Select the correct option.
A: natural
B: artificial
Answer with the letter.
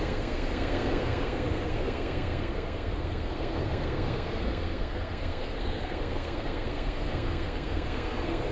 B